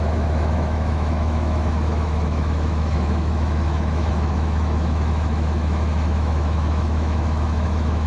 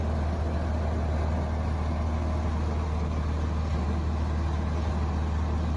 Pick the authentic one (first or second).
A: second